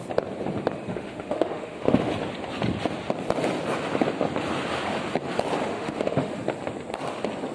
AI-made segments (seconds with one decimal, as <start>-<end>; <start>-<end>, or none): 0.9-2.1; 5.7-6.3